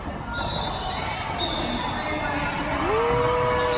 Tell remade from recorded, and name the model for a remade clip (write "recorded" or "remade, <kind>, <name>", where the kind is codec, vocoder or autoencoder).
recorded